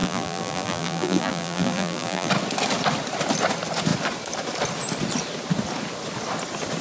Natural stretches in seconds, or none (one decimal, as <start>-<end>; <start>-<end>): 2.3-6.8